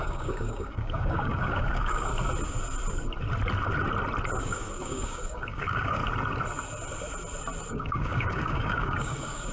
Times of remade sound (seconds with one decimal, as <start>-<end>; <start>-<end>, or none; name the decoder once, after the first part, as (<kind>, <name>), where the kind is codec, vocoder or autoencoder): 0.0-2.1 (codec, DAC); 4.4-6.0; 7.7-9.5